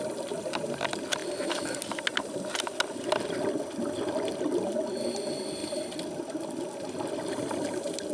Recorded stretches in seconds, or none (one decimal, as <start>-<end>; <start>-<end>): 0.0-5.6; 6.2-8.1